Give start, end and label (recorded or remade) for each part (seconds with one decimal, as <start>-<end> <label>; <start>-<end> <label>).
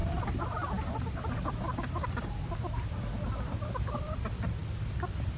0.0-2.8 remade; 2.8-5.4 recorded